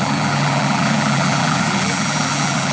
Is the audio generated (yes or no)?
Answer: yes